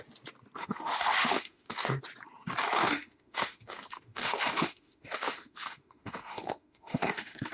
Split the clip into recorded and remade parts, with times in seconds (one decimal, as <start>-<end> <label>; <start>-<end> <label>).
0.0-0.6 recorded; 0.6-2.0 remade; 2.0-2.8 recorded; 2.8-7.5 remade